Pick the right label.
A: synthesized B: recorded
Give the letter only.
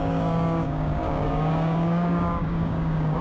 A